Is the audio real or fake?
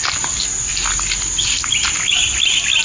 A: real